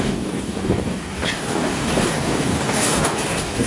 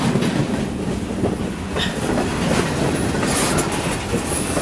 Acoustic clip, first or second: second